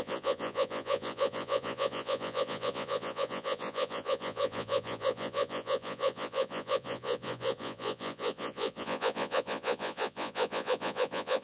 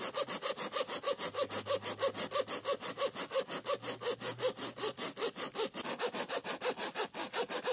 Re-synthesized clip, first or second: first